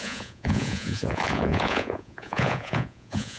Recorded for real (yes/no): no